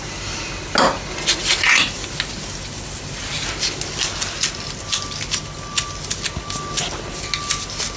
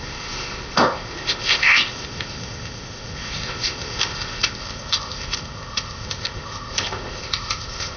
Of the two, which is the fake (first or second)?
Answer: second